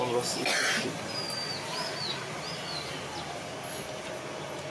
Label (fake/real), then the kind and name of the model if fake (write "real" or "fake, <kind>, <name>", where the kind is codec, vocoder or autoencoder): real